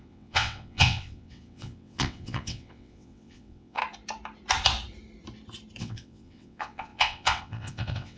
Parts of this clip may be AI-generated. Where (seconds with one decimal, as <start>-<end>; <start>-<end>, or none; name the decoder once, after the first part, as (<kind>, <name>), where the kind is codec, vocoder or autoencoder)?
0.0-3.8 (vocoder, WaveNeXt); 5.8-8.2